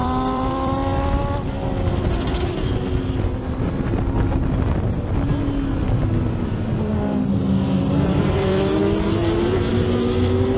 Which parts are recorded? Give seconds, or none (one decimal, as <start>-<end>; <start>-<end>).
1.2-10.6